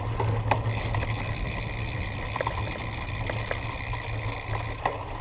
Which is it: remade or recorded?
recorded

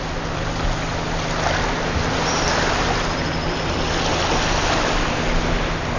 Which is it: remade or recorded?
recorded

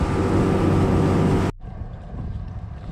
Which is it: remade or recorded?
recorded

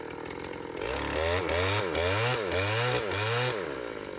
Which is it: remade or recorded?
recorded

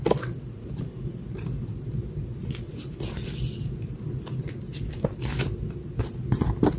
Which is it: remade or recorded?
recorded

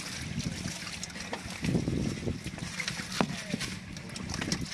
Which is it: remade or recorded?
recorded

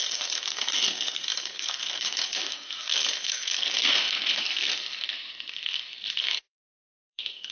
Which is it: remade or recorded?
remade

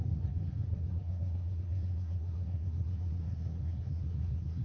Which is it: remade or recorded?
remade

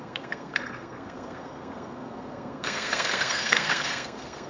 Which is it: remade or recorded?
remade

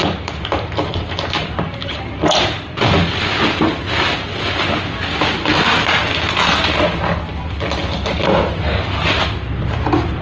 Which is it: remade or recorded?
recorded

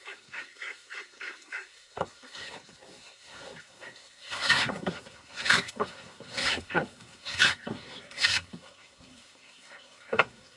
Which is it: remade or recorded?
remade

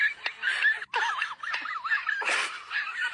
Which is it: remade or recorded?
recorded